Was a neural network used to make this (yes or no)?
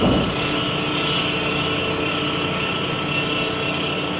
no